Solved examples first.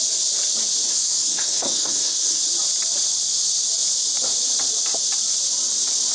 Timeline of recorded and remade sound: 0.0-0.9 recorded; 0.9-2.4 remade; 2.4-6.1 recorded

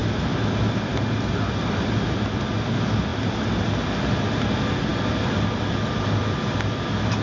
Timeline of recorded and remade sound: 0.0-7.2 recorded

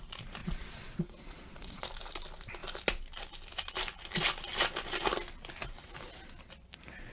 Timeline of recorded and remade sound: 0.0-0.4 recorded; 0.4-1.8 remade; 1.8-7.1 recorded